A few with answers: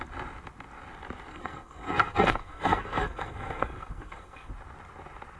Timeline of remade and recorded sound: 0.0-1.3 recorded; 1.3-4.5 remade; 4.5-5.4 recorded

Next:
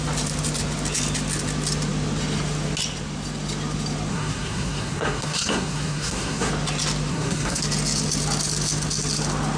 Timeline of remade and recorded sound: 0.0-4.1 recorded; 4.1-6.5 remade; 6.5-7.1 recorded; 7.1-7.6 remade; 7.6-9.6 recorded

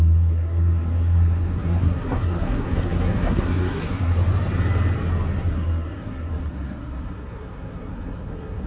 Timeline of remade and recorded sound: 0.0-4.2 remade; 4.2-5.5 recorded; 5.5-8.7 remade

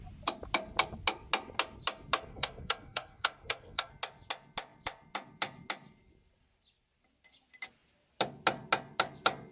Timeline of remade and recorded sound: 0.0-2.3 recorded; 2.3-3.9 remade; 3.9-9.5 recorded

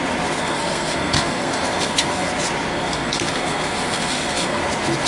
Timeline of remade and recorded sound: 0.0-0.4 recorded; 0.4-2.3 remade; 2.3-2.7 recorded; 2.7-4.6 remade; 4.6-5.1 recorded